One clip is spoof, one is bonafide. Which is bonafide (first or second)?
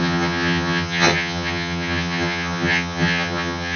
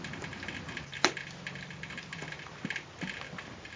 second